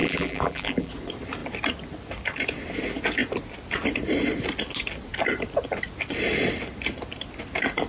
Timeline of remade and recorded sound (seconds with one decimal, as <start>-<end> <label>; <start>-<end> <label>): 0.0-0.9 remade; 0.9-7.9 recorded